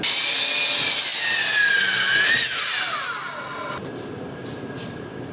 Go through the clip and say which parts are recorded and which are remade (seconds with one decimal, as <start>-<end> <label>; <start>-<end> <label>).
0.0-5.3 recorded